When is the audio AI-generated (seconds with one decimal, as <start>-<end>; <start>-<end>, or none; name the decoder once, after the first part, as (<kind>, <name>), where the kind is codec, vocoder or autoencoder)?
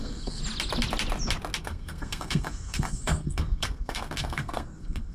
0.0-0.4 (codec, SNAC); 1.6-5.1